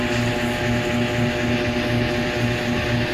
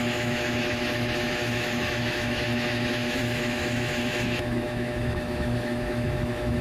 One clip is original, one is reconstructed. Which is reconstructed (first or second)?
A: second